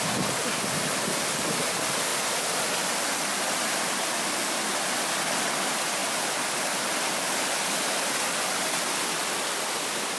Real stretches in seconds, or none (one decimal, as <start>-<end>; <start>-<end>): 0.0-10.2